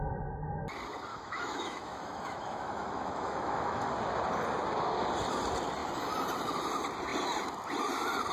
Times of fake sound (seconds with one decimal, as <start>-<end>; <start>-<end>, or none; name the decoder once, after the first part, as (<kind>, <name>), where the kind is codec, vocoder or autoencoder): 1.1-3.9 (autoencoder, DAC-VAE)